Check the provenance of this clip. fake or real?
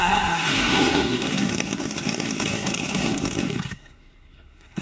fake